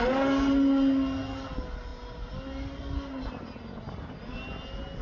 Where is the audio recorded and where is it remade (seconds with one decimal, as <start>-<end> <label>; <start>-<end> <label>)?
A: 0.0-5.0 recorded